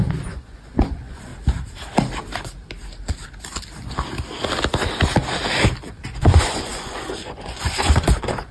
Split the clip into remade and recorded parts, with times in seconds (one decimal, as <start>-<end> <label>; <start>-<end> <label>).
0.0-1.3 remade; 1.3-5.9 recorded; 5.9-8.5 remade

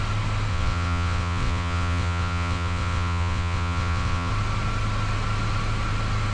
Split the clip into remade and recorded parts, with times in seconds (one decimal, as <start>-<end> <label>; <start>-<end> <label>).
0.0-0.5 recorded; 0.5-4.3 remade; 4.3-6.3 recorded

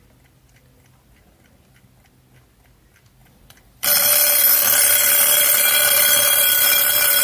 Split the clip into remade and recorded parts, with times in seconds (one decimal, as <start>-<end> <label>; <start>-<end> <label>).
0.0-3.2 recorded; 3.2-3.9 remade; 3.9-4.5 recorded; 4.5-6.4 remade; 6.4-7.2 recorded

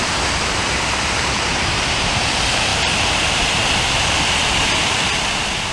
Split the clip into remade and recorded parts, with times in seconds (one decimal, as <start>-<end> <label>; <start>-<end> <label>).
0.0-5.7 recorded

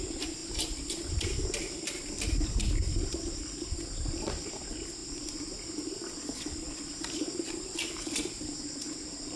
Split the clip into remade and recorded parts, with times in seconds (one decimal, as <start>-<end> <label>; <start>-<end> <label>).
0.0-9.4 recorded

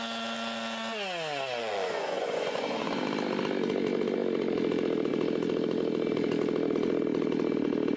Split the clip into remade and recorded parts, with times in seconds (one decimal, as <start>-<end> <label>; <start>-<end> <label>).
0.0-1.6 recorded; 1.6-3.0 remade; 3.0-8.0 recorded

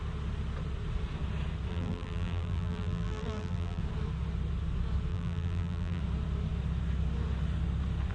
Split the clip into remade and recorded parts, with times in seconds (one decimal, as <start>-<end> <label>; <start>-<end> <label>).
0.0-1.7 recorded; 1.7-3.8 remade; 3.8-5.1 recorded; 5.1-6.0 remade; 6.0-8.1 recorded

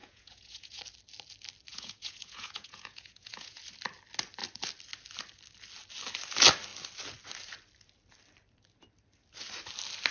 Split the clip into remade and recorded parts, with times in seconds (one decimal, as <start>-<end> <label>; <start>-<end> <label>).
0.0-0.8 remade; 0.8-1.7 recorded; 1.7-3.6 remade; 3.6-10.1 recorded